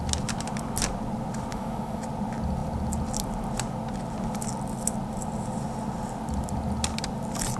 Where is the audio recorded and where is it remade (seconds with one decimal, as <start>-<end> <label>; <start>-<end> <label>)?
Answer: 0.0-1.5 recorded; 1.5-2.0 remade; 2.0-7.6 recorded